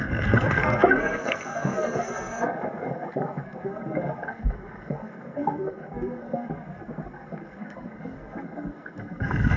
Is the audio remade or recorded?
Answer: remade